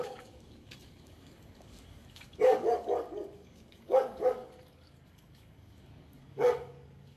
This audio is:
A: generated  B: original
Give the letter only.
A